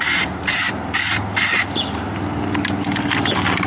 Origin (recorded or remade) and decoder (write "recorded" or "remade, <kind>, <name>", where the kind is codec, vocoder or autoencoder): remade, vocoder, BigVGAN v2